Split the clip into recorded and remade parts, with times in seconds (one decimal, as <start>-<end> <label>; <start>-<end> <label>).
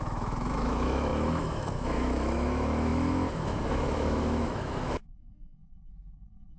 0.0-6.6 remade